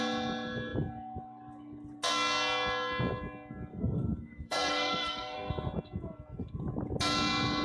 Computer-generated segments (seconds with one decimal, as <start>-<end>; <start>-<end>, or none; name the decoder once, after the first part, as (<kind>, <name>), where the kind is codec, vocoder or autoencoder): 3.7-5.5 (codec, SNAC)